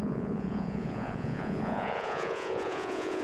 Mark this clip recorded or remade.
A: remade